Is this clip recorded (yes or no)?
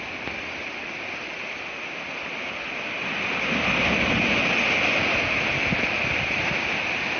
yes